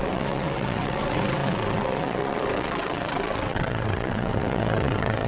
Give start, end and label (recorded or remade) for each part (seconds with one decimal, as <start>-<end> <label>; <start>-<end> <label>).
0.0-5.3 remade